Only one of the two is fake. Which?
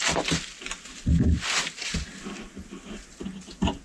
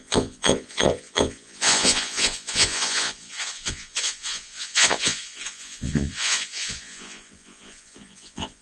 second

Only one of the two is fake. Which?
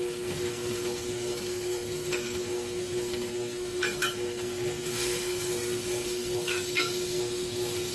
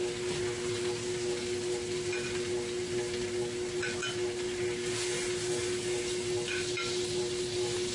first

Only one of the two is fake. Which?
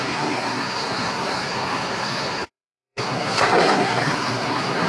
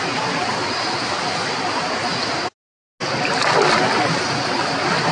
first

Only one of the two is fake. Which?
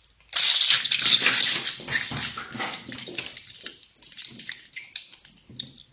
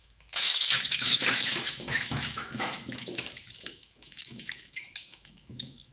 second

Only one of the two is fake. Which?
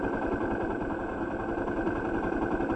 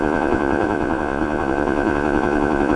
second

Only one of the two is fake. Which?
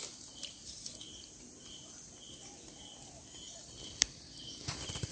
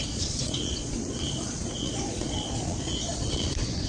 second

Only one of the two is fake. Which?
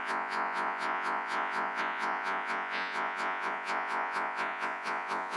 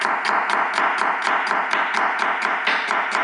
first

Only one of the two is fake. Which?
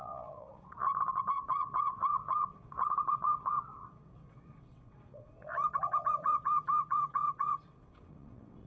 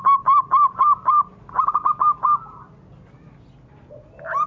first